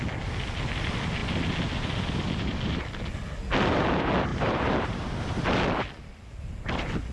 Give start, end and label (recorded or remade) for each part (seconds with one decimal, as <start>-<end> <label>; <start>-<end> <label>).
0.0-4.3 recorded; 4.3-5.2 remade; 5.2-7.1 recorded